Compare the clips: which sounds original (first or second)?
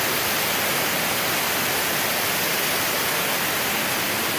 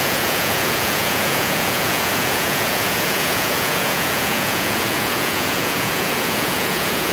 first